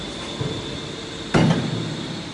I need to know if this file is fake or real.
real